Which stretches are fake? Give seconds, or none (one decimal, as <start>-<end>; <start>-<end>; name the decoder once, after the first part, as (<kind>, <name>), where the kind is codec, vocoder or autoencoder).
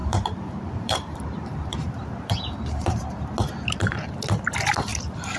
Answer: 0.0-3.2 (vocoder, BigVGAN v2); 4.9-5.4